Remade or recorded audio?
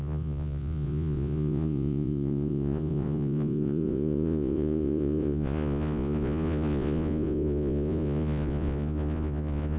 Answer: remade